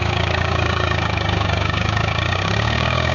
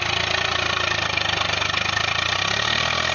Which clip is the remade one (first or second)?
first